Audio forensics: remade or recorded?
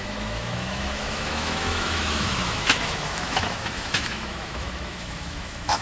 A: remade